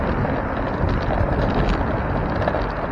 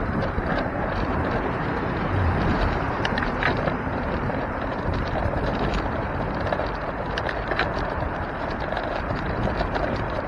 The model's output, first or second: second